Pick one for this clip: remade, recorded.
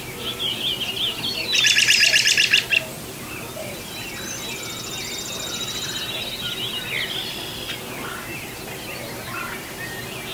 recorded